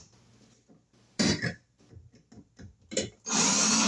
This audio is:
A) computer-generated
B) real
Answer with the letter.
B